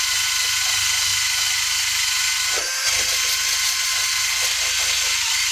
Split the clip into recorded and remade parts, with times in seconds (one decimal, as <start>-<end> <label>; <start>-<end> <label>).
0.0-5.5 recorded